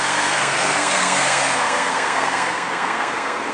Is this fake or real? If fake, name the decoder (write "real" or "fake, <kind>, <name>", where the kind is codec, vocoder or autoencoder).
fake, codec, SNAC